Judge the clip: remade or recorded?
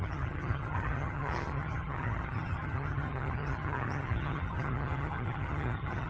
remade